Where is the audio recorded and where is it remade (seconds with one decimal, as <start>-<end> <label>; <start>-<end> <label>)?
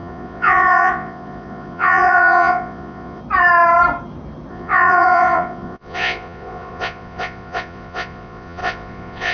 0.0-3.2 remade; 3.2-4.5 recorded; 4.5-9.3 remade